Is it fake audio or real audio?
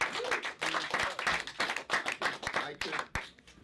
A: real